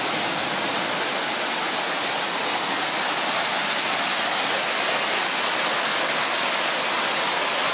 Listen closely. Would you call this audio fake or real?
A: real